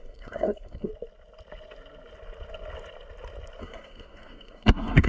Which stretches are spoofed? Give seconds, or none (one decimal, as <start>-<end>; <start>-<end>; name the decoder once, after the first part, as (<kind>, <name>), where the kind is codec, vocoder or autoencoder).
0.0-0.9 (codec, SNAC); 3.6-5.1